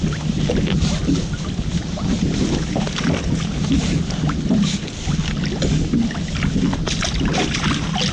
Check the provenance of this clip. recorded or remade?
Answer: recorded